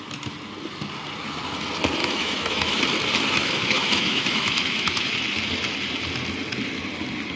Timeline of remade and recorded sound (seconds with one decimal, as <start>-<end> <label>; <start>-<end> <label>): 0.0-2.0 recorded; 2.0-2.8 remade; 2.8-3.4 recorded; 3.4-5.1 remade; 5.1-7.4 recorded